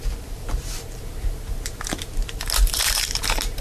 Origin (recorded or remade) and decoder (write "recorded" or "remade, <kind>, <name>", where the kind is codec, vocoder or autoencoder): remade, vocoder, BigVGAN v2